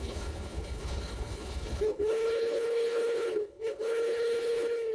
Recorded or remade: remade